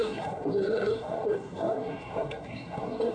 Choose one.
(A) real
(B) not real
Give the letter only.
B